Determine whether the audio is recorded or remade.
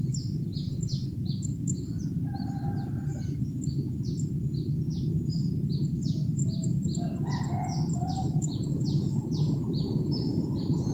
remade